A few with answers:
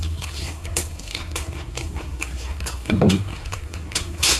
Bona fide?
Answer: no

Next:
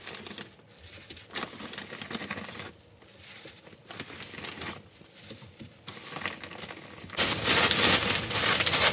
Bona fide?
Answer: yes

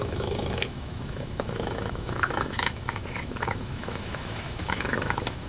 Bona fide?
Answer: no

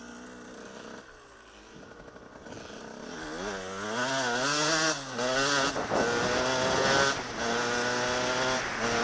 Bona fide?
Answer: yes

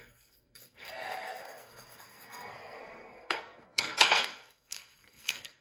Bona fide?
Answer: no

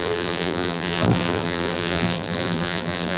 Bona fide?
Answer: no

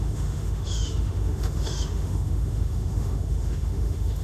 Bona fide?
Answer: no